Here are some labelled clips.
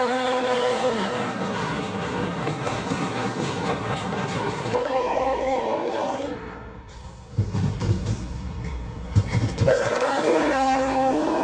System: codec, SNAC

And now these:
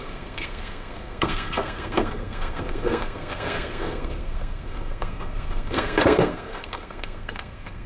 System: codec, SNAC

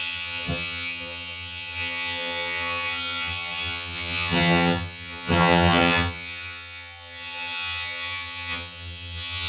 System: vocoder, HiFi-GAN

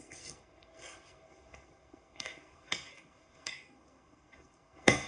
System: codec, SNAC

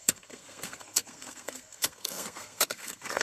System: codec, SNAC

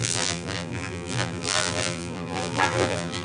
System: vocoder, BigVGAN v2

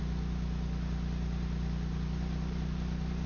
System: none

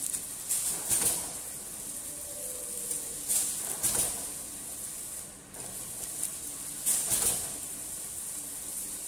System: none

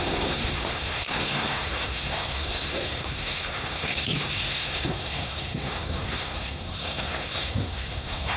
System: codec, SNAC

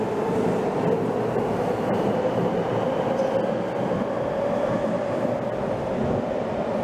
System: none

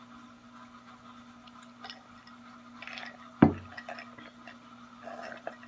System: none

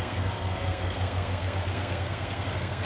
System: codec, SNAC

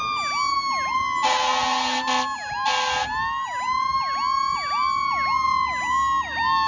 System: none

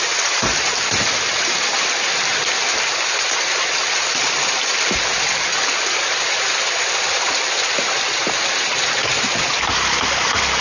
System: none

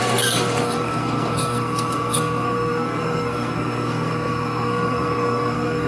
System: codec, SNAC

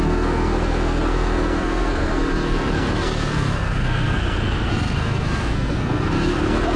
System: codec, SNAC